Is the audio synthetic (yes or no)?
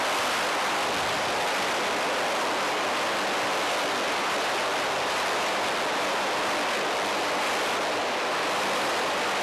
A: no